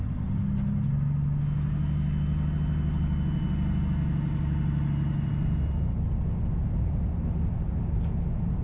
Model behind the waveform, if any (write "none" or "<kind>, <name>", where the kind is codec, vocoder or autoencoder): none